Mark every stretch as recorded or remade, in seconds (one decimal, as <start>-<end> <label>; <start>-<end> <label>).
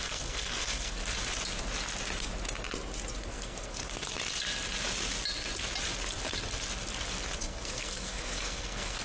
0.0-1.0 remade; 1.0-3.2 recorded; 3.2-3.8 remade; 3.8-7.4 recorded; 7.4-9.0 remade